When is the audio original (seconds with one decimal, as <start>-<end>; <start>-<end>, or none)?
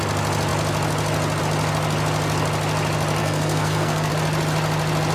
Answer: 0.0-3.2; 4.1-5.1